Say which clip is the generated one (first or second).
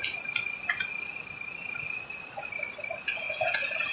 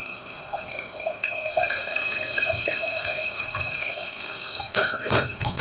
second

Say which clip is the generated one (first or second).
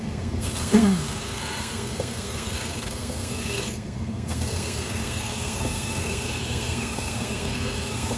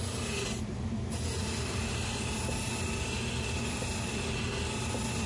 first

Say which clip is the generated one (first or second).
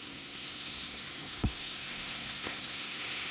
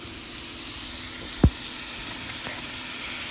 first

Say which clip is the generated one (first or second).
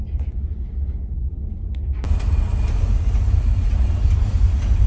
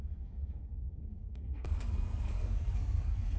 second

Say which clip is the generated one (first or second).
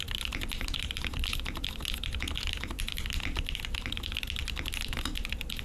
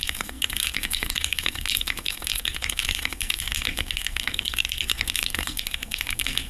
second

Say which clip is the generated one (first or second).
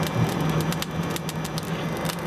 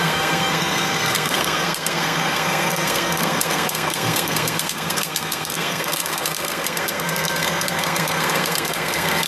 second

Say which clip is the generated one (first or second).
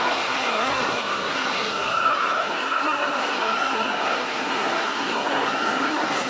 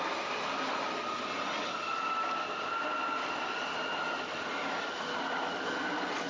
first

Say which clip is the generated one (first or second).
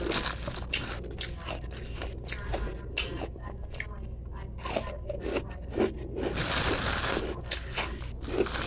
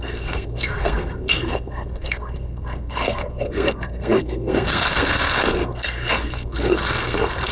second